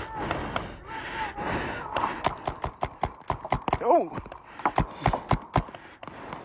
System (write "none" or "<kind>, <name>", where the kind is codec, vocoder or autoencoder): none